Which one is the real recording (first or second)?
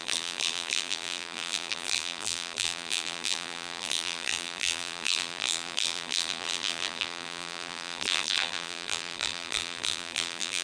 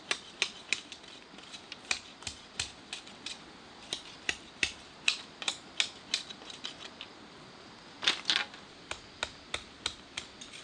second